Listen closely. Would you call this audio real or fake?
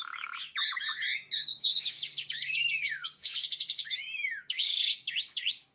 fake